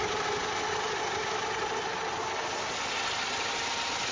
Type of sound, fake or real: real